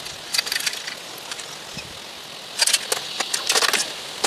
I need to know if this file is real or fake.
real